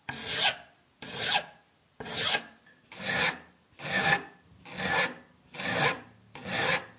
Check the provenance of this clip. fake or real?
real